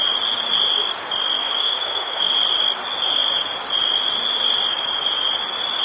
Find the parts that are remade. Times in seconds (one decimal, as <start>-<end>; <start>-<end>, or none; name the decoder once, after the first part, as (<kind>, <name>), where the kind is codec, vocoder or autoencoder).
1.4-2.3 (autoencoder, DAC-VAE)